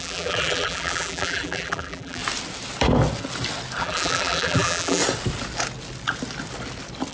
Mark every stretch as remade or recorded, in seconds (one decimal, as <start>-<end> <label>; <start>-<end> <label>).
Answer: 0.0-2.2 remade; 2.2-3.8 recorded; 3.8-5.0 remade; 5.0-7.1 recorded